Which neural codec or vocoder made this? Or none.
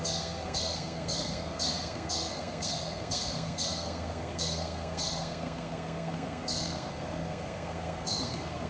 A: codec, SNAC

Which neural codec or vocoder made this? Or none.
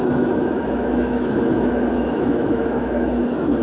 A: autoencoder, DAC-VAE